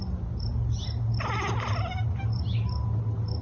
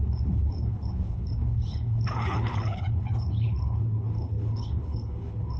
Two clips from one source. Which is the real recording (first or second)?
first